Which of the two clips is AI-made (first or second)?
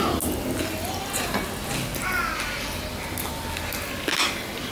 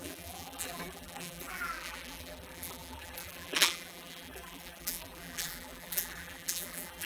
second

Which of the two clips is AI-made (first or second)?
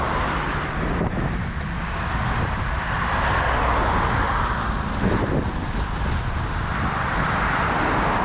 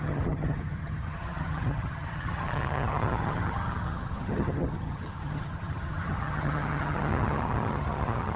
second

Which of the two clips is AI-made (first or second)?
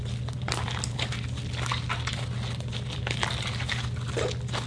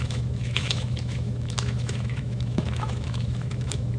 second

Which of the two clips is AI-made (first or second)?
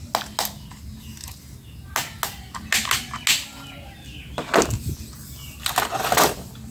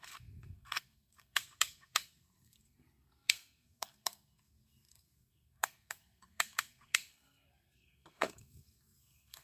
second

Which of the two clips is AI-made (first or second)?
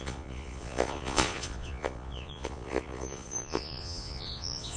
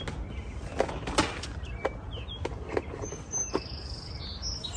first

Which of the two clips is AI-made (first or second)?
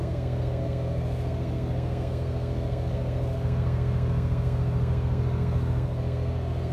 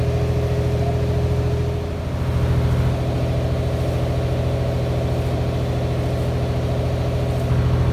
first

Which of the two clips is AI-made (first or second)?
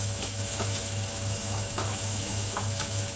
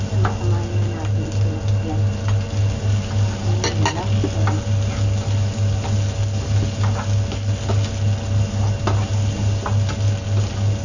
first